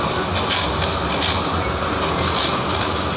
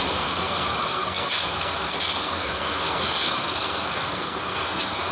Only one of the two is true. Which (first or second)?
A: first